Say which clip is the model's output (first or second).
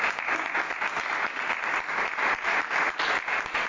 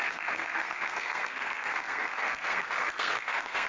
second